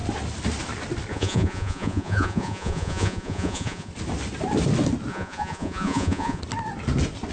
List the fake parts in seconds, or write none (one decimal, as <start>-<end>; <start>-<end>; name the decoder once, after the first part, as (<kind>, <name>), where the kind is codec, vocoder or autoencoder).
1.1-3.9 (vocoder, Vocos); 5.1-6.4